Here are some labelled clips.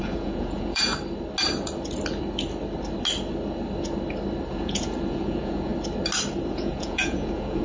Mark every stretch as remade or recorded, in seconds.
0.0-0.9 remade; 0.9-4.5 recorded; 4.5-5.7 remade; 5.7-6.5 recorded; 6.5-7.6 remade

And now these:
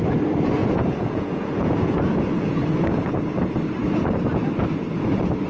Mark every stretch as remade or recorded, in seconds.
0.0-0.6 recorded; 0.6-3.0 remade; 3.0-5.5 recorded

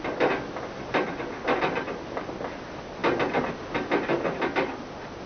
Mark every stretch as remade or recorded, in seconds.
0.0-5.3 recorded

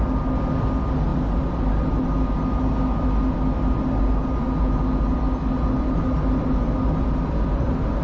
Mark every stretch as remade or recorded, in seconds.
0.0-8.0 recorded

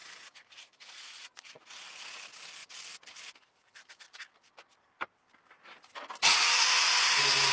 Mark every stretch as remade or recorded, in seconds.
0.0-2.2 remade; 2.2-7.5 recorded

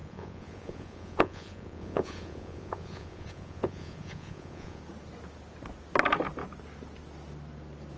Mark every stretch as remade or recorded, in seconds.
0.0-4.8 remade; 4.8-8.0 recorded